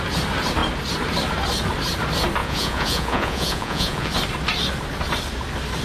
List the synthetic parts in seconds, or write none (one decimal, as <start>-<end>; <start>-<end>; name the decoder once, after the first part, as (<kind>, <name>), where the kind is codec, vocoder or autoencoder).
2.4-4.1 (vocoder, Vocos)